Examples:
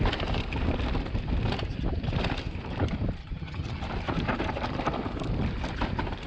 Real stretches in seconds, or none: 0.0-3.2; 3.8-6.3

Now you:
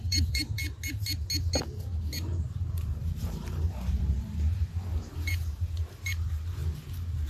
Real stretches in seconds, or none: 0.6-2.6; 6.6-7.3

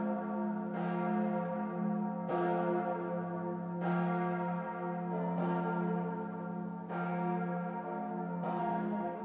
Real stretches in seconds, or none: 0.0-8.6

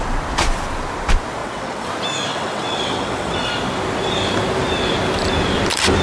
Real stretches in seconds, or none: 0.0-1.4; 1.9-2.3; 3.5-6.0

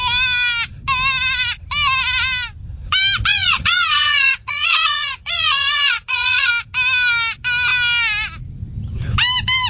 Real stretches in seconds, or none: 0.0-3.3; 6.5-9.7

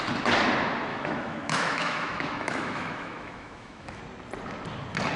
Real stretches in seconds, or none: 0.0-0.9; 4.0-5.2

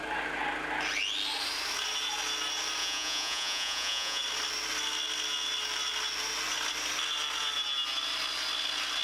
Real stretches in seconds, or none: 0.0-2.8; 4.2-9.0